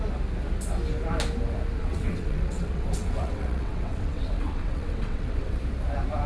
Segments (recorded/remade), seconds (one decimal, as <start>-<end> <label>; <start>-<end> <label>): 0.0-1.8 recorded; 1.8-5.6 remade; 5.6-6.3 recorded